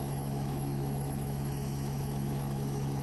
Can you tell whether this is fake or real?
fake